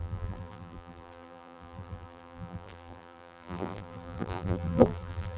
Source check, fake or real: fake